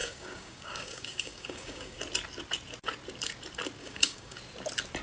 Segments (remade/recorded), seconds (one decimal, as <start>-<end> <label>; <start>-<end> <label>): 0.0-2.0 remade; 2.0-3.8 recorded; 3.8-4.4 remade; 4.4-5.0 recorded